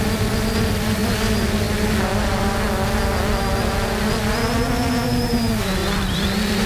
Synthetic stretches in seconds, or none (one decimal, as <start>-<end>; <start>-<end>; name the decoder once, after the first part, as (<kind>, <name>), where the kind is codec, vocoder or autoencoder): 5.8-6.7 (vocoder, BigVGAN v2)